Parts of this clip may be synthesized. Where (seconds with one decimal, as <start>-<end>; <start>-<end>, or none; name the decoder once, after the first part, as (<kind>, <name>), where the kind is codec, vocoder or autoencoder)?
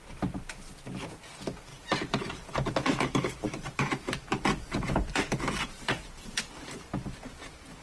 1.7-6.4 (vocoder, BigVGAN v2)